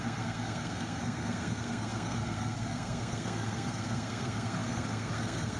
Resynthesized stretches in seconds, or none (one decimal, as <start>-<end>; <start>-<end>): 0.0-5.6